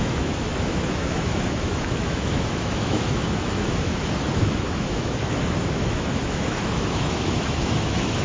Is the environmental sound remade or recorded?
remade